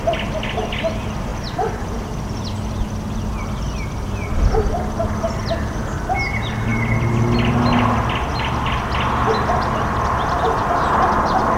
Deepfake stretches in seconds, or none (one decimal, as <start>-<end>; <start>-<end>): none